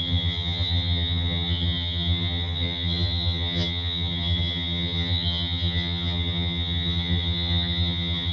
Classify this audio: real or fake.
fake